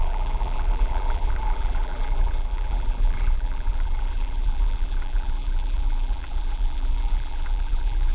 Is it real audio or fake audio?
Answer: fake